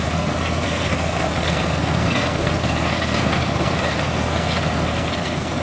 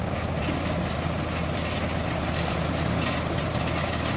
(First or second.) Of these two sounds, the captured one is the second